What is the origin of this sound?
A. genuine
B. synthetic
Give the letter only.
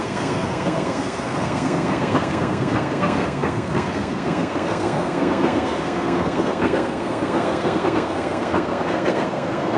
B